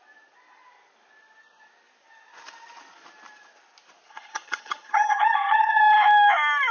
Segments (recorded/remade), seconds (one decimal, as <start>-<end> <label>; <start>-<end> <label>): 0.0-4.1 recorded; 4.1-5.8 remade; 5.8-6.7 recorded